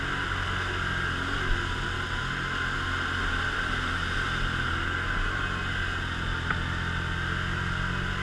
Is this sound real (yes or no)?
yes